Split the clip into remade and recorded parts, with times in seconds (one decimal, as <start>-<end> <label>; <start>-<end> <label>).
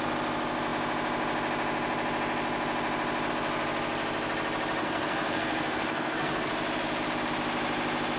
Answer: 0.0-4.8 recorded; 4.8-6.5 remade; 6.5-8.2 recorded